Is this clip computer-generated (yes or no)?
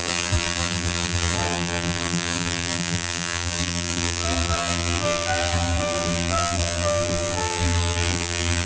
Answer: yes